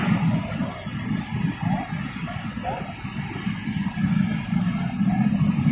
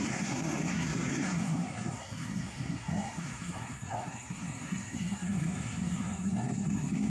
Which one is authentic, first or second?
first